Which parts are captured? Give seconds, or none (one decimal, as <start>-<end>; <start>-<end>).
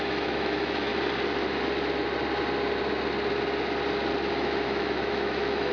0.9-4.3